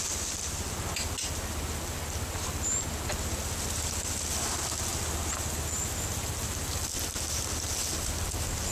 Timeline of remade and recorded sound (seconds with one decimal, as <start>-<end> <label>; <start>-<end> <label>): 0.0-8.7 recorded